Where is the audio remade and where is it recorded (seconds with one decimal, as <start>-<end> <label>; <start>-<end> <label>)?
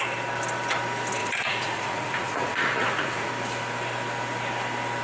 0.0-1.2 recorded; 1.2-3.3 remade; 3.3-5.0 recorded